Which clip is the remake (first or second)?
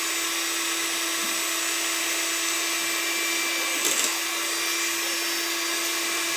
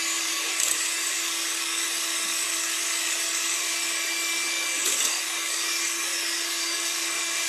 second